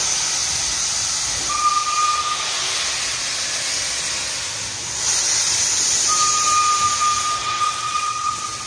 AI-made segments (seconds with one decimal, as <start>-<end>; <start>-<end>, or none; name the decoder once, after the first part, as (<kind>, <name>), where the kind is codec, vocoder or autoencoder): 7.4-8.7 (vocoder, WaveNeXt)